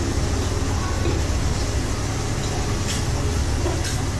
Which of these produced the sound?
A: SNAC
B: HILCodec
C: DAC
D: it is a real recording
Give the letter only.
D